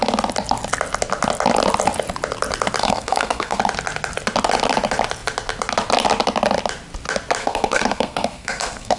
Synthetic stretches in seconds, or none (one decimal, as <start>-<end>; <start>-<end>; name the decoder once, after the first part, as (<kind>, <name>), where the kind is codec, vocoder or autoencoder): 2.8-3.6 (codec, SNAC); 7.4-9.0